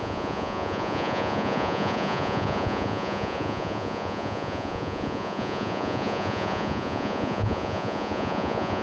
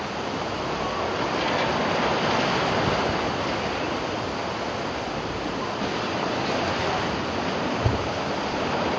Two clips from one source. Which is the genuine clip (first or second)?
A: second